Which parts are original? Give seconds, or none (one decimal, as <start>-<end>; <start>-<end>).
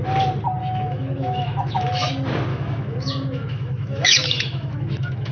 0.0-0.6; 2.1-2.5